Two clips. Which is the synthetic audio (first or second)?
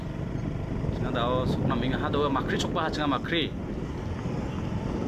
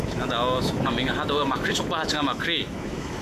second